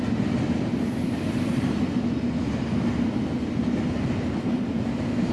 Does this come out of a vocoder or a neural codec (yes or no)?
no